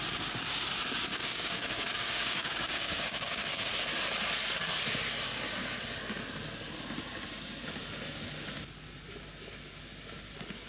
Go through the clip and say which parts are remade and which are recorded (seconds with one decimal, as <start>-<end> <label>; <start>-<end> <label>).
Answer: 0.0-1.1 recorded; 1.1-3.7 remade; 3.7-10.7 recorded